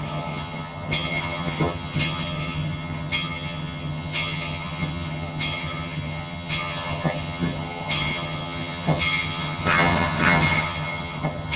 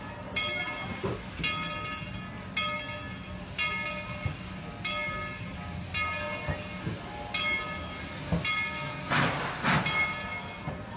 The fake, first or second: first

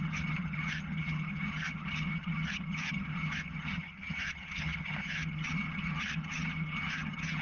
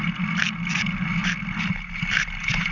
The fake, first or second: first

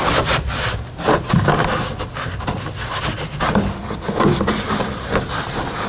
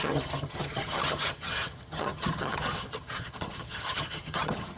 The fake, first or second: second